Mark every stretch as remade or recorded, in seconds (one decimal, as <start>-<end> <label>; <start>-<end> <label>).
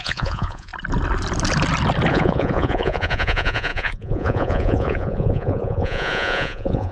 0.0-0.7 remade; 0.7-2.1 recorded; 2.1-6.9 remade